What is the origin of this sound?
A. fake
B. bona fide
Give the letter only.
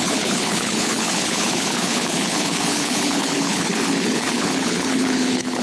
A